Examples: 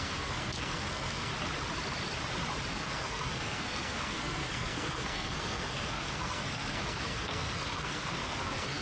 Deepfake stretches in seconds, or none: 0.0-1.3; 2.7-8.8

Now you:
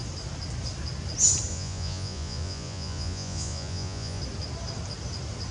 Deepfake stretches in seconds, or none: 1.5-4.2

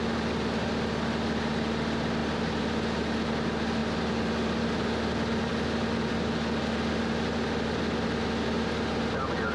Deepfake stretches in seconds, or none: none

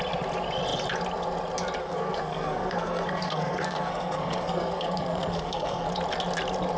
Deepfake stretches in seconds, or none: 1.8-5.9

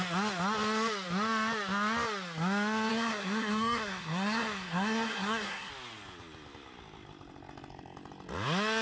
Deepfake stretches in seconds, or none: 2.9-5.7